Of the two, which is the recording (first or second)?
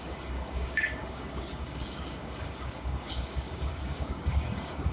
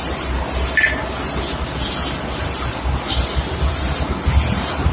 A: second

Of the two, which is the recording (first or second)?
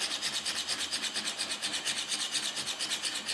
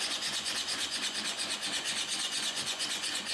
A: first